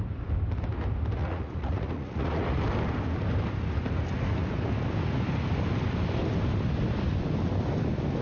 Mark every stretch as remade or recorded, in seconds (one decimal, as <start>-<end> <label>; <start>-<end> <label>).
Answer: 0.0-1.2 recorded; 1.2-2.6 remade; 2.6-8.2 recorded